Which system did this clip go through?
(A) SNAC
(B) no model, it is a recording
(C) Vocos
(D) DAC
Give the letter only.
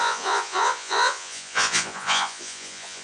C